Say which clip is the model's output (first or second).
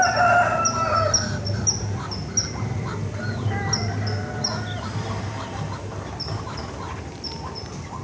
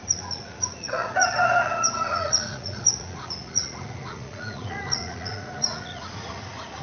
second